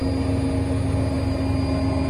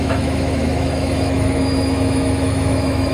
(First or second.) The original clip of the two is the first